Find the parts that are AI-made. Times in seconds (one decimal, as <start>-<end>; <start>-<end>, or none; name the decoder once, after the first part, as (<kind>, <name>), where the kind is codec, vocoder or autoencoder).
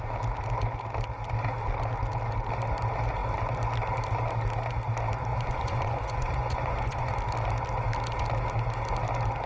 5.3-7.1 (vocoder, Vocos)